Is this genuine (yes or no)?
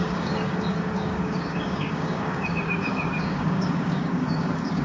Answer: no